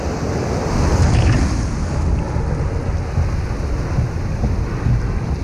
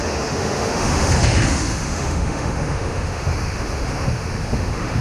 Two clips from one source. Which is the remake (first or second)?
second